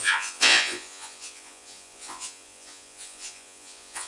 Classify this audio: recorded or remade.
remade